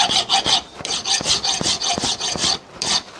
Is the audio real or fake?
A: fake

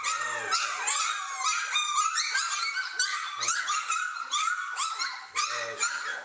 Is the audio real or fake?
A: real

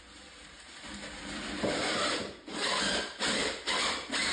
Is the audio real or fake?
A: real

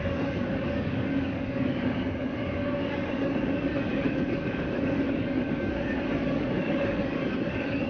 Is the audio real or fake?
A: fake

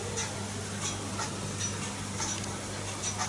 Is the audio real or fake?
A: real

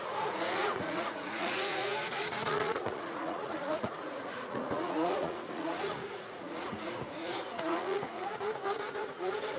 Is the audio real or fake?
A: fake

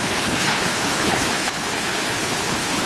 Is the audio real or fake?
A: fake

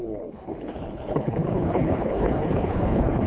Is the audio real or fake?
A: fake